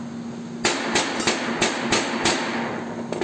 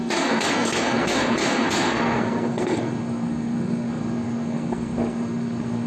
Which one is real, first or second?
first